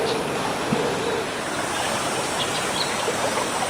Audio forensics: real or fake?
real